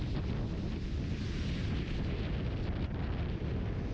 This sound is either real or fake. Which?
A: real